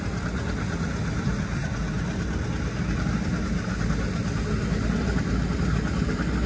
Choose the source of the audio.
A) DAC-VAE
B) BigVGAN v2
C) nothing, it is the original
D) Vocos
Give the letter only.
C